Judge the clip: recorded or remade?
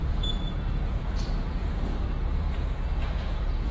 remade